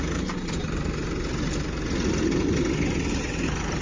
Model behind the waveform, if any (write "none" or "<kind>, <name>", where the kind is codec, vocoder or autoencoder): none